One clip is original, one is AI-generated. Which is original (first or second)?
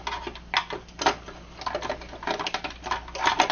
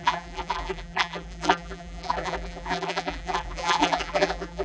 first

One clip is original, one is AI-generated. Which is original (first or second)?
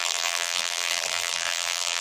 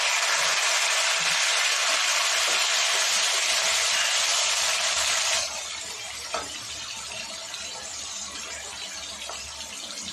second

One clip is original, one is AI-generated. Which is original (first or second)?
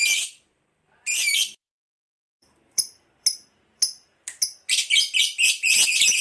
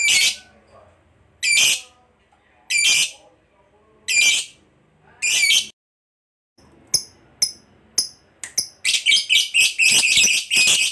second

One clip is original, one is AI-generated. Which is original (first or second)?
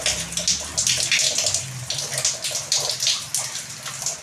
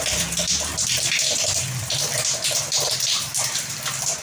first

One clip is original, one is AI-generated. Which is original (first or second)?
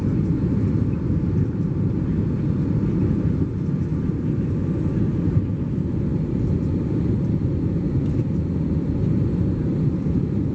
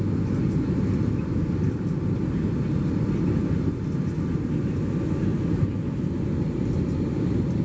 second